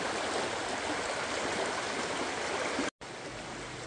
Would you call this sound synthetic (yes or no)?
no